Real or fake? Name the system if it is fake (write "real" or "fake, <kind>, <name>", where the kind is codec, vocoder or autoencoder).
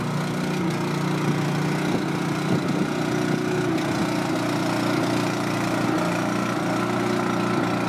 real